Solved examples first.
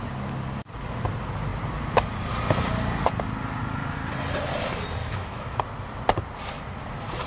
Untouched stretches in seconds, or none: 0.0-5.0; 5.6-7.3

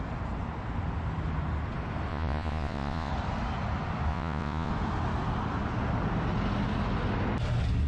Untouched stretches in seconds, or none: 0.0-2.1; 3.1-4.1; 4.7-7.9

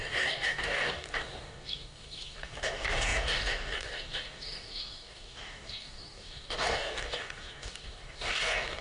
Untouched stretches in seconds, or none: none

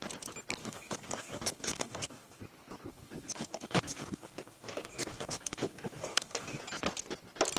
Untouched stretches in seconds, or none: 0.0-0.6; 2.4-2.9; 6.6-7.6

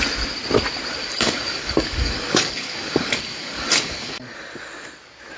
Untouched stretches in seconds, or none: 0.0-1.0; 4.2-5.4

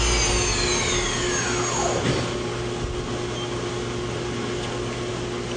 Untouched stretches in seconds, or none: 0.0-5.6

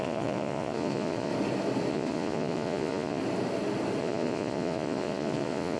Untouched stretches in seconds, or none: 1.3-1.9; 3.2-4.0